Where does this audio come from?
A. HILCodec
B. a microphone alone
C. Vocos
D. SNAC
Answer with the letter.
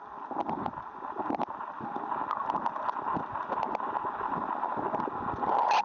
B